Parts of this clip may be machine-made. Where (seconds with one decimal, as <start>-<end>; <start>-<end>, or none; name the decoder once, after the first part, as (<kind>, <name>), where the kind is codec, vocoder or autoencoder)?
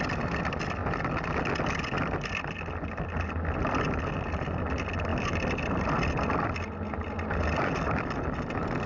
none